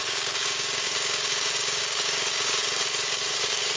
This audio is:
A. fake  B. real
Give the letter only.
A